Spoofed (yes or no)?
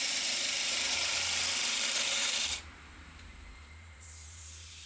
yes